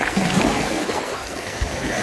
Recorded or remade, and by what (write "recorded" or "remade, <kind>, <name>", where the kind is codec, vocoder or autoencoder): remade, codec, SNAC